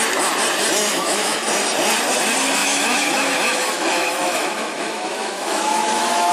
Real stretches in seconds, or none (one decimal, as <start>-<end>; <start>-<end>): 0.0-0.9; 1.4-2.6